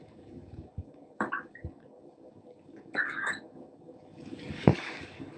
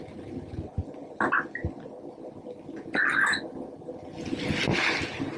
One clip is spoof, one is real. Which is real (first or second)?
second